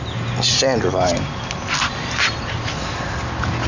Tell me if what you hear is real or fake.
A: real